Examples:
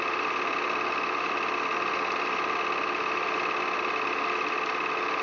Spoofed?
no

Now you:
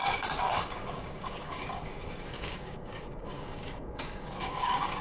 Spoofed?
yes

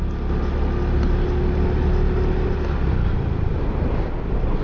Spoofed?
no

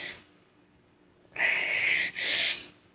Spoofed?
yes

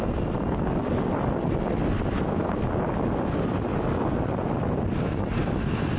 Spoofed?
no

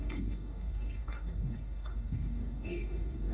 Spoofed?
yes